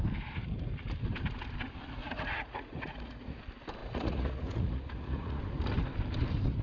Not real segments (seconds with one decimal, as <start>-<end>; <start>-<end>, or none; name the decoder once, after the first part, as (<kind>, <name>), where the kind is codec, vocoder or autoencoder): 2.0-3.4 (vocoder, Vocos); 3.8-5.4

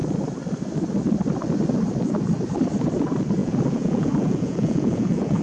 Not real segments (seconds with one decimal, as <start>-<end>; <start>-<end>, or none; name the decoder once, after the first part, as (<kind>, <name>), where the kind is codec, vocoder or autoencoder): 3.4-5.4 (vocoder, Vocos)

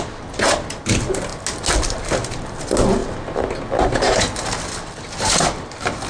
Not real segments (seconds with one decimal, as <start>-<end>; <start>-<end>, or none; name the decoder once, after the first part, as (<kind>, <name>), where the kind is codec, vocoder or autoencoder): none

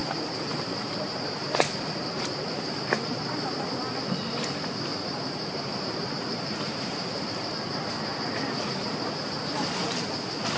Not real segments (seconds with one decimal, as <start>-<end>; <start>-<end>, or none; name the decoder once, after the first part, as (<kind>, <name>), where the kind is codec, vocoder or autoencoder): 0.0-3.7 (vocoder, BigVGAN v2); 4.9-7.5